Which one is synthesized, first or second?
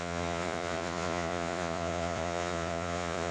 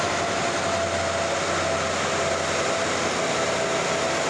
first